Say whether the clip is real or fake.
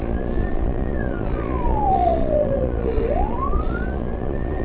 fake